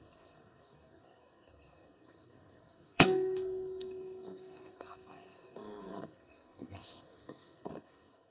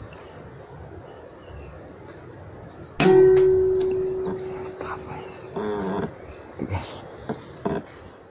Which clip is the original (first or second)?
second